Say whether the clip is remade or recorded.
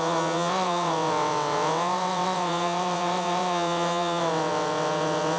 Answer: remade